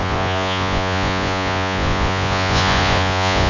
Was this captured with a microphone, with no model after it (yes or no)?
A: no